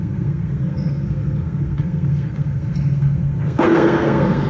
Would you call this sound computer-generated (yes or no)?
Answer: yes